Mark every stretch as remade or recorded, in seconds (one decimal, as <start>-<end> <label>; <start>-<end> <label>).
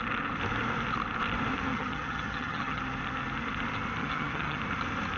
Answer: 0.0-1.7 recorded; 1.7-2.8 remade; 2.8-4.0 recorded; 4.0-4.6 remade; 4.6-5.2 recorded